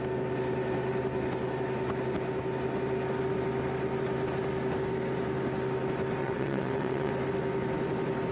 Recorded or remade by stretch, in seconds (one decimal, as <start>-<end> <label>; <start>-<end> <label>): 0.0-6.2 recorded; 6.2-7.1 remade; 7.1-8.3 recorded